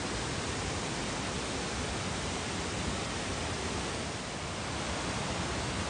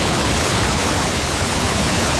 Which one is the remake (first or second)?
second